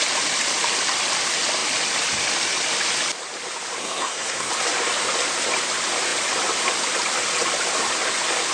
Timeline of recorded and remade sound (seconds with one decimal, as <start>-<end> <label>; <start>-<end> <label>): 0.0-3.8 recorded; 3.8-4.5 remade; 4.5-8.5 recorded